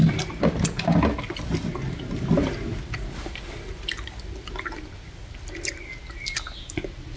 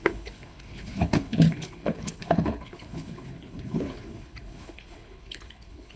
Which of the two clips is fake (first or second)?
second